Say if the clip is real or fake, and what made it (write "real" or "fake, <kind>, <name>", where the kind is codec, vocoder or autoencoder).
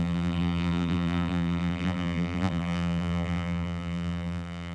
fake, vocoder, BigVGAN v2